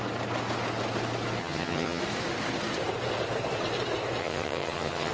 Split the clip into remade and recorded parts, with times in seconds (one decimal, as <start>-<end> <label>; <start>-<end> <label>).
0.0-1.4 recorded; 1.4-2.0 remade; 2.0-4.2 recorded; 4.2-5.1 remade